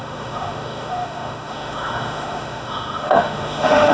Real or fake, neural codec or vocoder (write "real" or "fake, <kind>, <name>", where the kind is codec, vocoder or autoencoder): fake, autoencoder, DAC-VAE